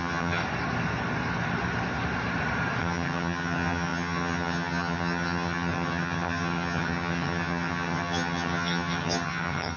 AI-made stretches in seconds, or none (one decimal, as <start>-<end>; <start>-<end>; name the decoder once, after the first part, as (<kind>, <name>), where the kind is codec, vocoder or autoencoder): 0.0-0.4 (vocoder, HiFi-GAN); 2.8-9.8